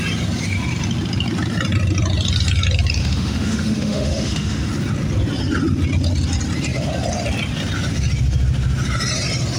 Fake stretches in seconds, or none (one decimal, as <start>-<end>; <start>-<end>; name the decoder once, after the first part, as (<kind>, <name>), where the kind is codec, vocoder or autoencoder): 3.0-4.7 (autoencoder, DAC-VAE)